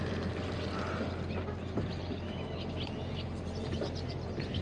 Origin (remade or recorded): recorded